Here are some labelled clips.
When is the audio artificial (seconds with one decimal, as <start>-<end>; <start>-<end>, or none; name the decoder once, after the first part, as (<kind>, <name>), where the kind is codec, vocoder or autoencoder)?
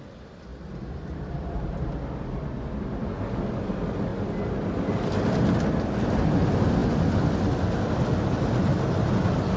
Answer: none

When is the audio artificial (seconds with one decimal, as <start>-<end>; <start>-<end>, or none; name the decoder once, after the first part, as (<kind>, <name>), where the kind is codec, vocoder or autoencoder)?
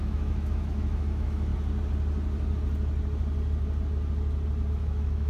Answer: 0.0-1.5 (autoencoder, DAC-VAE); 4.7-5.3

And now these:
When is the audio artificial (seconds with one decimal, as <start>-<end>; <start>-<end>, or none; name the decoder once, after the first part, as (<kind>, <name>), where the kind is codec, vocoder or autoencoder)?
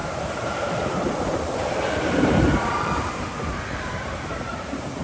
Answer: 0.0-5.0 (vocoder, BigVGAN v2)